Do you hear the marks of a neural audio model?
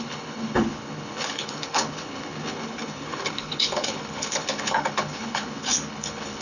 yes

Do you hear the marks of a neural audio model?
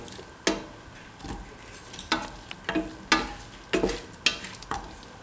no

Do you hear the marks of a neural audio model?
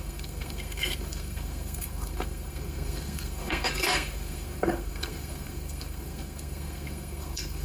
yes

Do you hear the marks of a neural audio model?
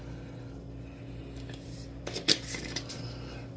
no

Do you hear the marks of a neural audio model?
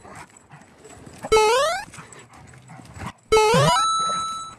no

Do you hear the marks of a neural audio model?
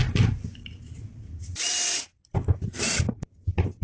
no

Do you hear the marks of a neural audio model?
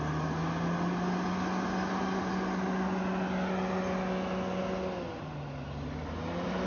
no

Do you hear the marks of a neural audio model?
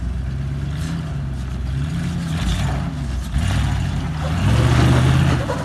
no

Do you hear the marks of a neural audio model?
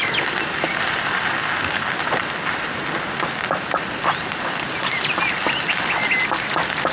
no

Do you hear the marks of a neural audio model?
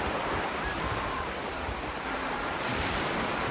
no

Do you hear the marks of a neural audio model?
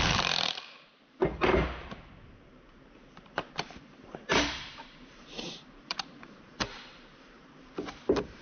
yes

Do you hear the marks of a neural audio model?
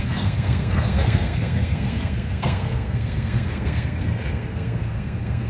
yes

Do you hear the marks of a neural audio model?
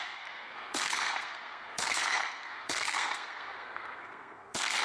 yes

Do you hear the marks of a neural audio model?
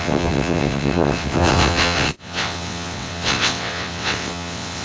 yes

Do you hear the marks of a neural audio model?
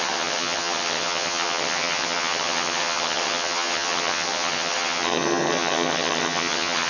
yes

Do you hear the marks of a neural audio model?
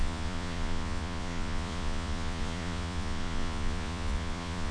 yes